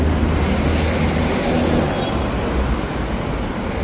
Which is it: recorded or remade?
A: recorded